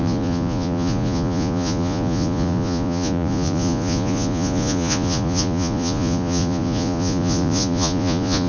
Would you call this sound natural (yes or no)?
no